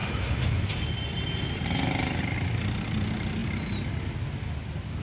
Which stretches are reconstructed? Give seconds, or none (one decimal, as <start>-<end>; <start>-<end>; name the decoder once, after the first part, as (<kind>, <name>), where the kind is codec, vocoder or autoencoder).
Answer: 0.0-0.7 (vocoder, BigVGAN v2)